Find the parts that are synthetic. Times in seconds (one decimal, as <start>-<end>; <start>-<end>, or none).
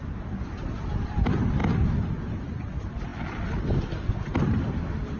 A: none